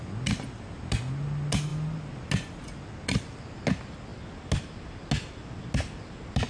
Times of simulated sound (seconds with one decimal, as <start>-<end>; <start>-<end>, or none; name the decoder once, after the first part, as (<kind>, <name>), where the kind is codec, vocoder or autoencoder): none